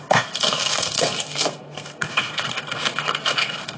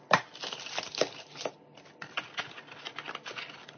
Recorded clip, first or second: second